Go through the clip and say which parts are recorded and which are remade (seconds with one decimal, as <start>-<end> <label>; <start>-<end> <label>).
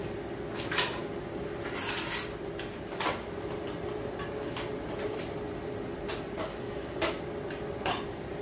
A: 0.0-6.5 recorded; 6.5-7.0 remade; 7.0-8.4 recorded